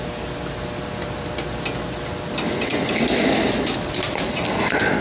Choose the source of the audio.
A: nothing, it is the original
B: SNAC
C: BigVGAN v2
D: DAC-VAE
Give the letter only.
A